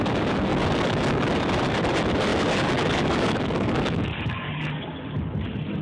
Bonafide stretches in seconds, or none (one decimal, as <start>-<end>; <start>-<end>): 0.0-0.5; 1.3-2.3; 4.9-5.8